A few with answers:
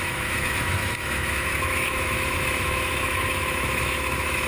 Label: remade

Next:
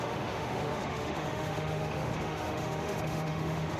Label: remade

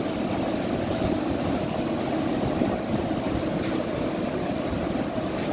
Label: recorded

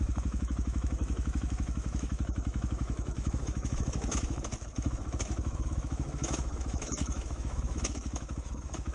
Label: remade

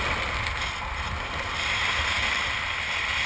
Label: recorded